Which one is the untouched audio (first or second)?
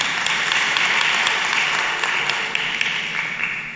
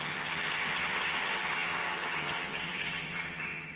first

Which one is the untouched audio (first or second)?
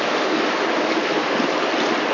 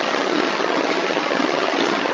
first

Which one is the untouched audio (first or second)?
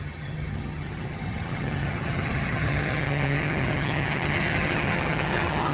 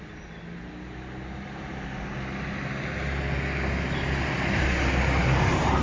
second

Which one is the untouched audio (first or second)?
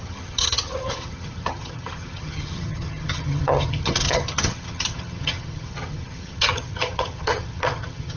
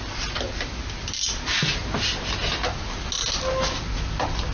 second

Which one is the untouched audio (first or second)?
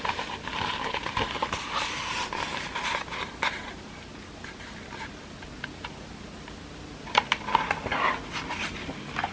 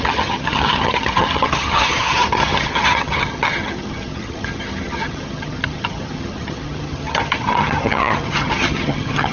first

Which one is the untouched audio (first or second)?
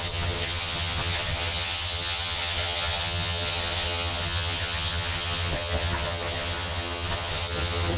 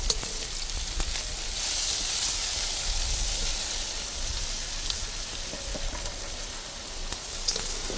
second